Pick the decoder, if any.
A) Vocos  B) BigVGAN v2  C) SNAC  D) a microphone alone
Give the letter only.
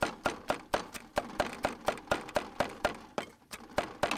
D